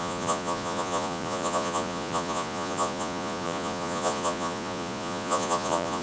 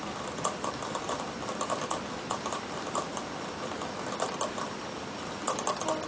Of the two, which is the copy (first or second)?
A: first